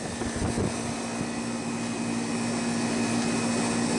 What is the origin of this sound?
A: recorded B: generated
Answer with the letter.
A